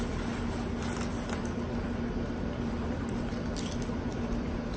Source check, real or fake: real